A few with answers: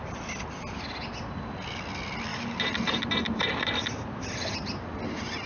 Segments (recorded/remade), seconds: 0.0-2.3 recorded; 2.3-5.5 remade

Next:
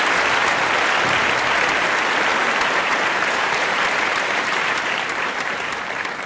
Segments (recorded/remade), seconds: 0.0-2.3 recorded; 2.3-6.3 remade

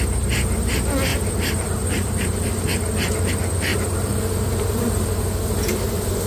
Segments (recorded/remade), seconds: 0.0-1.1 recorded; 1.1-3.3 remade; 3.3-3.7 recorded; 3.7-5.1 remade; 5.1-6.3 recorded